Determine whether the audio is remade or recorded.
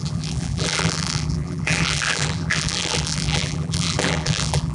remade